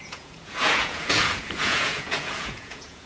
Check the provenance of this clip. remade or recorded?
remade